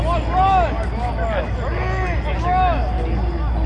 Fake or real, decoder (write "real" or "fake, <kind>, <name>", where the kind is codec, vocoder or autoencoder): real